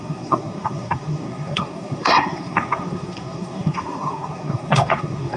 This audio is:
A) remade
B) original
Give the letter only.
A